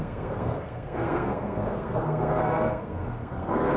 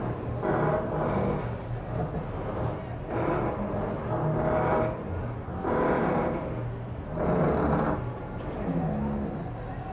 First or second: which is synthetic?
first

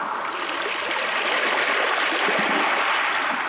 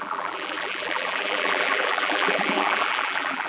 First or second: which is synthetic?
second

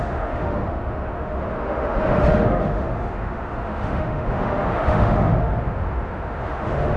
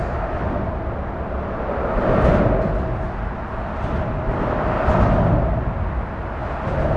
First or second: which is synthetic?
first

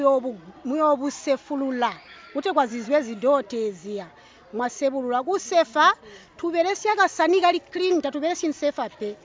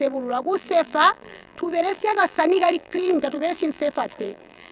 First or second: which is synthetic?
second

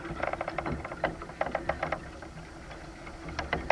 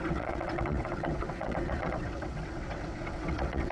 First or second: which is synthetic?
second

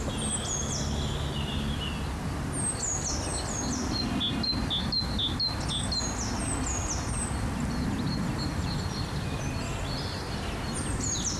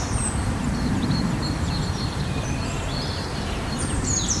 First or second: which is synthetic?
second